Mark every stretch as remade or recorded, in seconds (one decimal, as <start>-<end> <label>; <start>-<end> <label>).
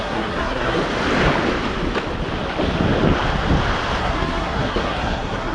0.0-0.8 remade; 0.8-4.0 recorded; 4.0-5.5 remade